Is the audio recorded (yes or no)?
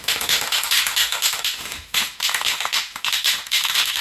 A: no